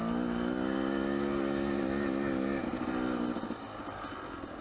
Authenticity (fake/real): real